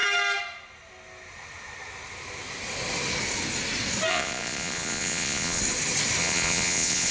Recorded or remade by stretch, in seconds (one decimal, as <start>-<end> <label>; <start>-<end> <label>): 0.0-4.1 recorded; 4.1-5.6 remade; 5.6-6.2 recorded; 6.2-7.1 remade